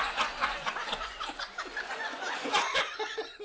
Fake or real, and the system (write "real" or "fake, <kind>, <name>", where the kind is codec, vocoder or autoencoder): fake, vocoder, Vocos